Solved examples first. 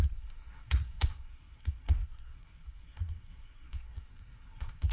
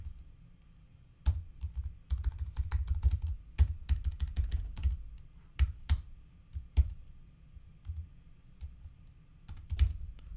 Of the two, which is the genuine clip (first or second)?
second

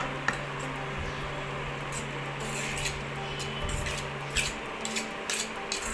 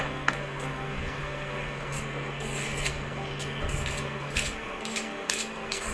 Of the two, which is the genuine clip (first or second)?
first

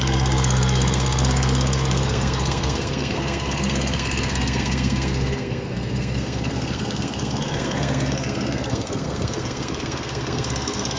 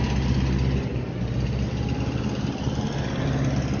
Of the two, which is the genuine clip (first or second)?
second